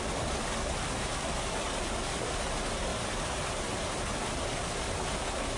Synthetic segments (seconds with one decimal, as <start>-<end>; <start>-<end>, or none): none